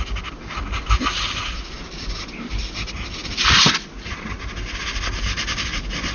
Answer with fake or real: real